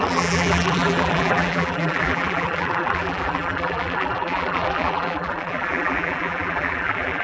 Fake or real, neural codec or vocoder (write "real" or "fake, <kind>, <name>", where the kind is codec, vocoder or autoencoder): fake, vocoder, BigVGAN v2